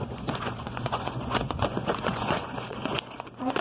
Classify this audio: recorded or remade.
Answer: remade